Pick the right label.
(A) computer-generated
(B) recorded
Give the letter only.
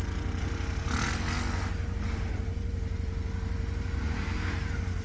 B